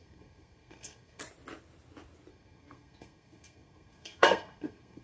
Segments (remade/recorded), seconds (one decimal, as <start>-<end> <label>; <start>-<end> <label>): 0.0-1.2 remade; 1.2-2.3 recorded; 2.3-5.0 remade